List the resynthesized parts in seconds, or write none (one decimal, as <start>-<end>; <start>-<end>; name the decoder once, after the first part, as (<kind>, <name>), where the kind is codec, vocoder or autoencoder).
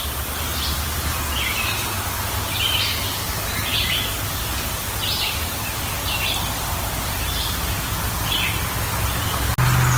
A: 3.7-7.9 (vocoder, BigVGAN v2)